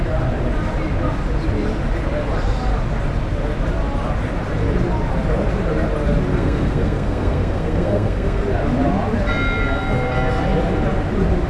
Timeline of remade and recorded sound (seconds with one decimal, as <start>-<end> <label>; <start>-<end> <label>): 0.0-6.3 recorded; 6.3-8.4 remade; 8.4-11.5 recorded